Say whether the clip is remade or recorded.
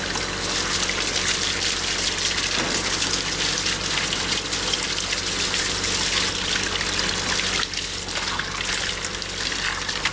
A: recorded